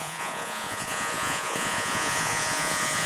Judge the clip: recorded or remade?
remade